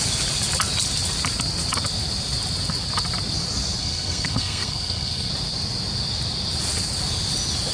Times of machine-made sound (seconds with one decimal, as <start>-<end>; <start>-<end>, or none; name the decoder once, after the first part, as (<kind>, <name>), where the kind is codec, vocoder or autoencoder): 3.8-5.3 (codec, SNAC)